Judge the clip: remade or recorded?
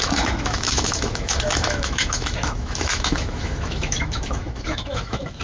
remade